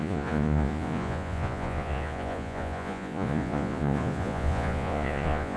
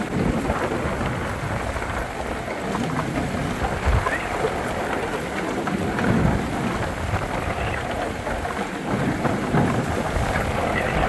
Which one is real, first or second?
second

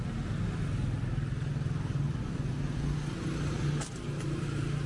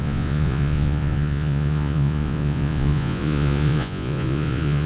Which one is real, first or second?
first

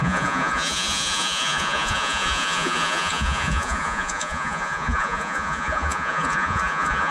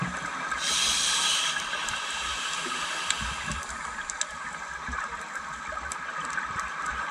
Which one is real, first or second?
second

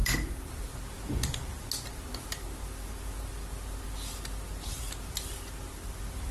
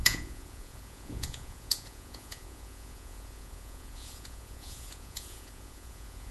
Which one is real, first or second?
first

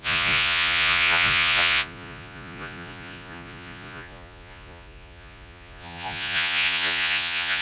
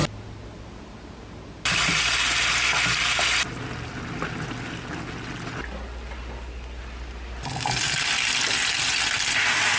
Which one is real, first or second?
second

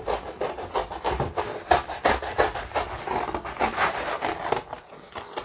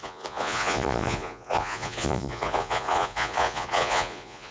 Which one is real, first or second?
first